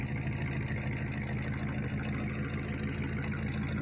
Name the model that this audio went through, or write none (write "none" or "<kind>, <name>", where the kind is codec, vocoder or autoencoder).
none